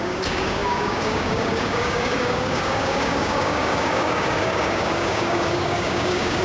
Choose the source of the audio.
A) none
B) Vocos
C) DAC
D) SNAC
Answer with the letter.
C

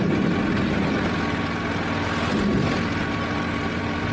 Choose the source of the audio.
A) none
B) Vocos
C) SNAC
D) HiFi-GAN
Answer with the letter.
A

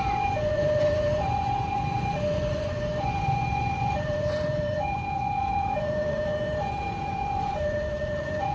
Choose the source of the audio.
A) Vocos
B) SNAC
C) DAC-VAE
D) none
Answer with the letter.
A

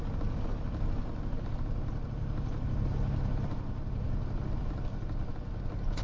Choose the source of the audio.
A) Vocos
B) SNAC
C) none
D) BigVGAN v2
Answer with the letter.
C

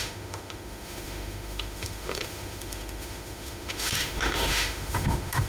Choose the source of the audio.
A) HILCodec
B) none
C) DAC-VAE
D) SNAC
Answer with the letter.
C